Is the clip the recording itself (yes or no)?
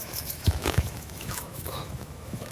no